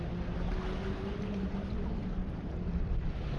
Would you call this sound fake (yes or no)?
no